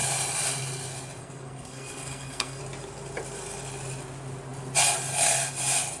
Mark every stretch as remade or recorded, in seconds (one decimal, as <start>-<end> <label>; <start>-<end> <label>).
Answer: 0.0-1.2 recorded; 1.2-2.6 remade; 2.6-6.0 recorded